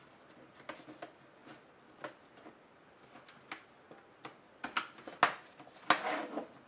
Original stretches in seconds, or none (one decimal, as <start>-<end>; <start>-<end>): 0.0-6.7